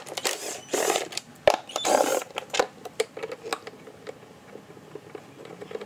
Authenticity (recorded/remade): remade